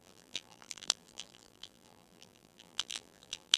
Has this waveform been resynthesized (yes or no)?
yes